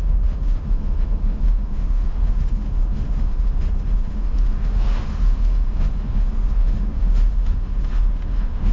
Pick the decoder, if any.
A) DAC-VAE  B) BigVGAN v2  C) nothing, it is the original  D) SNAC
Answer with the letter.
A